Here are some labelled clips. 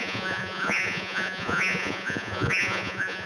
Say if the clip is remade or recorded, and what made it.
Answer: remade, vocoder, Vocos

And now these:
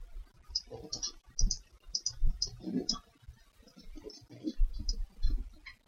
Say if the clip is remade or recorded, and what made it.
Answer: recorded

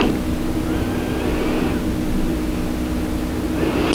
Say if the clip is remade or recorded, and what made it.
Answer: recorded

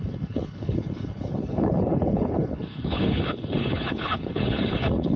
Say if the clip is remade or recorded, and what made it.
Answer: remade, codec, HILCodec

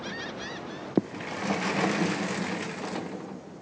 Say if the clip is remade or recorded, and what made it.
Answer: recorded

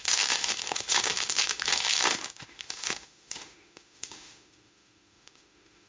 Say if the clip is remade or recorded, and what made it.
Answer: remade, autoencoder, DAC-VAE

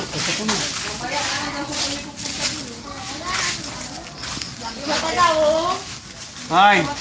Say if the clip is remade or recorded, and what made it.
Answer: recorded